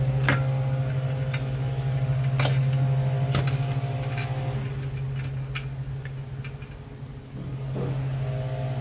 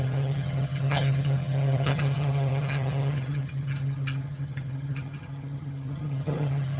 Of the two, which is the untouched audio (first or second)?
first